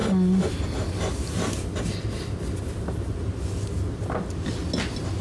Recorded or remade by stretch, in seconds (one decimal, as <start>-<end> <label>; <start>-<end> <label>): 0.0-5.2 recorded